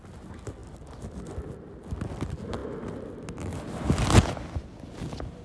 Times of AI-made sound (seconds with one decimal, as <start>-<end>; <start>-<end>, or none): none